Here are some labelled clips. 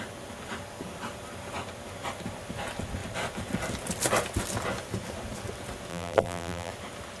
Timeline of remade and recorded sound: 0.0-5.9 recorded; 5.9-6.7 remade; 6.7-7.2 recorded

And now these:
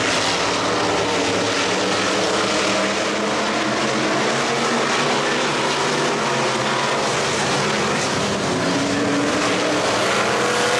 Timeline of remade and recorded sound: 0.0-10.8 recorded

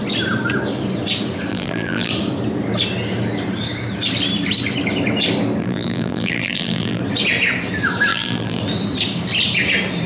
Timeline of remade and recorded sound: 0.0-1.5 recorded; 1.5-2.1 remade; 2.1-5.6 recorded; 5.6-7.0 remade; 7.0-8.1 recorded; 8.1-8.6 remade; 8.6-10.1 recorded

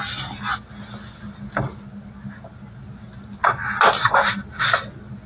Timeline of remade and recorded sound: 0.0-5.3 recorded

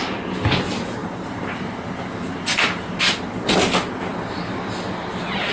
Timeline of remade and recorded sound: 0.0-1.0 recorded; 1.0-3.0 remade; 3.0-5.5 recorded